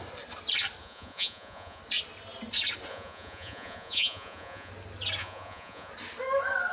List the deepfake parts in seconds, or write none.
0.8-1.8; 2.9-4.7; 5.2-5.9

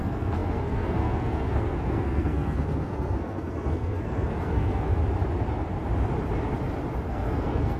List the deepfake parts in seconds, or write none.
0.0-5.0; 7.1-7.8